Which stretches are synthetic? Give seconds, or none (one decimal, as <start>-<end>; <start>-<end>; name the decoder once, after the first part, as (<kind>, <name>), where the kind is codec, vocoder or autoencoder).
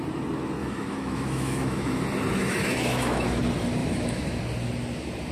0.6-2.0 (autoencoder, DAC-VAE); 2.4-3.4; 3.8-4.4